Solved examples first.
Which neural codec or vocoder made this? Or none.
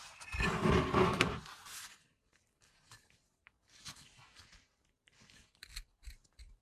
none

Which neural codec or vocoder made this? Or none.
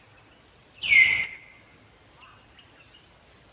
none